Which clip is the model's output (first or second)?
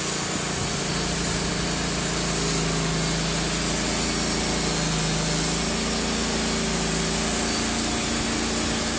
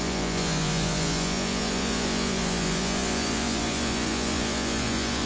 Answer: second